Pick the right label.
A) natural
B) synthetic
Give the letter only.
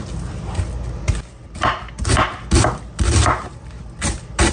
A